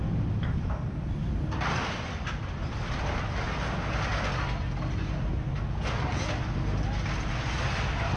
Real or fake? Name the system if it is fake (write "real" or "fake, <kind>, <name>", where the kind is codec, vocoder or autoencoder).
real